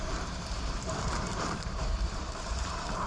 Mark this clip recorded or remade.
remade